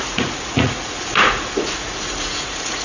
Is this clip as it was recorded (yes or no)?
no